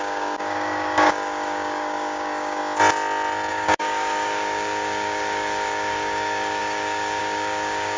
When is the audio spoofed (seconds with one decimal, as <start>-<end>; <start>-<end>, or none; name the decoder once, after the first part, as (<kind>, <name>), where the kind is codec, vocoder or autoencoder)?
0.0-2.6 (codec, DAC); 3.5-8.0